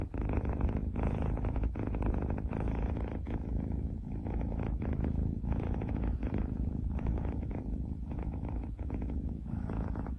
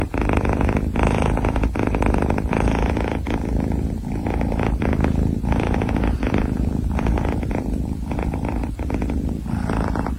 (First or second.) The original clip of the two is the second